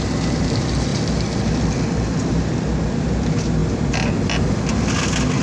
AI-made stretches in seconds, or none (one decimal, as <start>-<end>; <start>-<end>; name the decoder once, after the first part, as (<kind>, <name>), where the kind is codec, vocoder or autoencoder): none